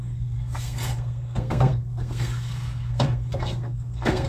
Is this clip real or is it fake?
fake